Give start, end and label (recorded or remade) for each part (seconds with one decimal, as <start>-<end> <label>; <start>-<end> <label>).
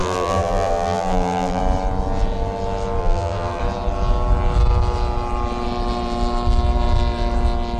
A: 0.0-1.6 remade; 1.6-3.0 recorded; 3.0-3.6 remade; 3.6-7.8 recorded